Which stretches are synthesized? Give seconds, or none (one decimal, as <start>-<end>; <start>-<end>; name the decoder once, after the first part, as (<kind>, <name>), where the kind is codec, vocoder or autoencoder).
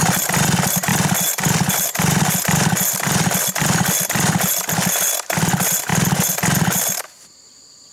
0.9-2.3 (vocoder, BigVGAN v2)